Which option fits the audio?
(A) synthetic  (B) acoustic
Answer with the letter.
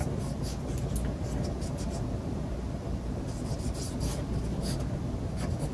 B